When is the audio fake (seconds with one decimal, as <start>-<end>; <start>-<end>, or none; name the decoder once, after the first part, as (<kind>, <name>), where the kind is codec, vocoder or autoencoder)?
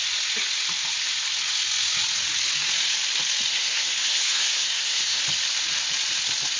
3.5-5.2 (codec, SNAC)